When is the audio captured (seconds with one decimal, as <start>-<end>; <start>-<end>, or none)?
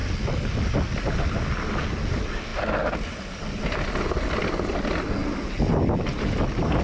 0.0-6.8